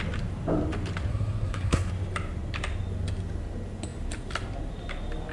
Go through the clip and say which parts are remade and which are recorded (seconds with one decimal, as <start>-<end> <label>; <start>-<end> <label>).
0.0-1.1 recorded; 1.1-1.9 remade; 1.9-5.3 recorded